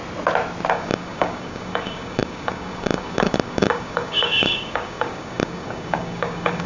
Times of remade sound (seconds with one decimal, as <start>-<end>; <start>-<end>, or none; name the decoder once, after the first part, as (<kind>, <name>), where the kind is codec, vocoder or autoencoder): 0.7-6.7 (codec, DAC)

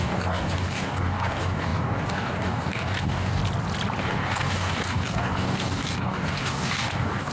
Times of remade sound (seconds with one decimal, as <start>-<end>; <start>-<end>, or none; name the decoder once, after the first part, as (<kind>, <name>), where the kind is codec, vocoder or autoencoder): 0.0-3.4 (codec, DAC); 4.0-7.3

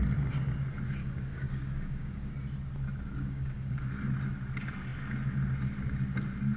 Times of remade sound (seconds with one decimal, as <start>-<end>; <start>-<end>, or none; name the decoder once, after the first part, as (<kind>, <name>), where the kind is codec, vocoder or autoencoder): 1.0-2.3 (codec, DAC); 3.2-3.9

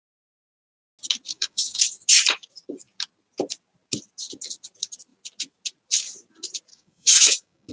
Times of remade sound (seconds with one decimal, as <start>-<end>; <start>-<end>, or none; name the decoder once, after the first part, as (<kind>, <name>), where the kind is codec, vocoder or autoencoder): 1.3-1.8 (codec, DAC); 6.7-7.7

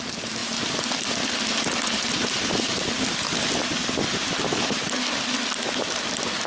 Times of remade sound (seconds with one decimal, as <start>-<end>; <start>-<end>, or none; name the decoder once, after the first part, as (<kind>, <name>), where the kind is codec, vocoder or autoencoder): none